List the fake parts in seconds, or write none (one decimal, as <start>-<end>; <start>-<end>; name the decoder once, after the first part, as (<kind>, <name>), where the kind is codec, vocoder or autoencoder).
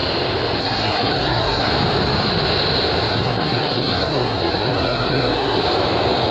0.6-1.7 (codec, SNAC); 3.1-5.6